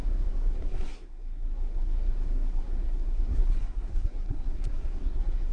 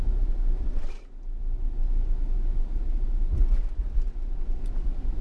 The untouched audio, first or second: second